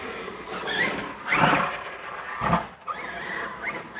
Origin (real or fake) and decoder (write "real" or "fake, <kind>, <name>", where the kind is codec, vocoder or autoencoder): real